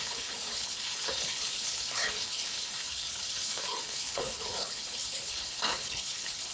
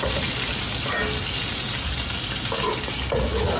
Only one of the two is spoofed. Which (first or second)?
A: first